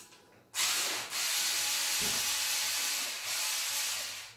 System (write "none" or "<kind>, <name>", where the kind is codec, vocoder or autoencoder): none